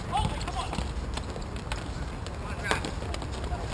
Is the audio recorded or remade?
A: recorded